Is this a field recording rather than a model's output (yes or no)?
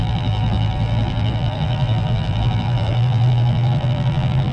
no